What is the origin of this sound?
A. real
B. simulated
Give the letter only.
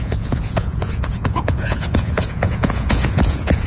B